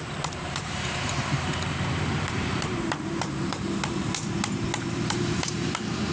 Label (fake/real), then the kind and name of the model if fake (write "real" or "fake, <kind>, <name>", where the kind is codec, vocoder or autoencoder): fake, vocoder, BigVGAN v2